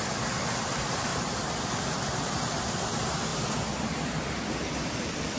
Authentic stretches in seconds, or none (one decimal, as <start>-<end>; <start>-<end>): 3.3-3.8